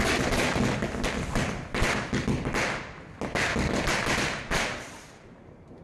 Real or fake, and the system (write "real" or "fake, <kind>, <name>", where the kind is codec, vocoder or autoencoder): real